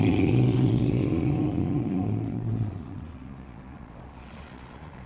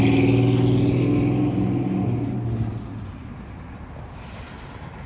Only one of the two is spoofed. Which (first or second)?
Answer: first